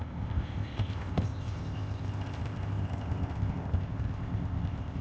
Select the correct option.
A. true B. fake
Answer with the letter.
B